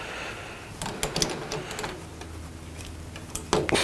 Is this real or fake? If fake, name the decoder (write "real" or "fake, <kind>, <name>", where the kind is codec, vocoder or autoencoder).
real